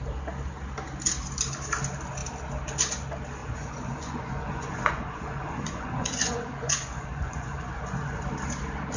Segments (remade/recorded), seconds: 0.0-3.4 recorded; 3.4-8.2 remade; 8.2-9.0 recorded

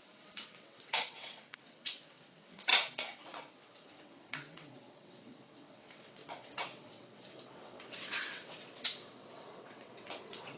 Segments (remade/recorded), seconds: 0.0-10.6 remade

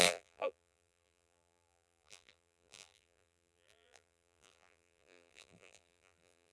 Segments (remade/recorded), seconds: 0.0-6.5 remade